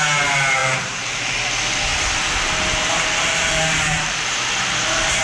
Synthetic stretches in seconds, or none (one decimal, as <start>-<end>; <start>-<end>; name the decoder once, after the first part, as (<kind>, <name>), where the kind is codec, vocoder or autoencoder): 0.6-1.3 (vocoder, BigVGAN v2); 1.9-5.2